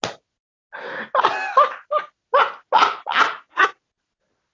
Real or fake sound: real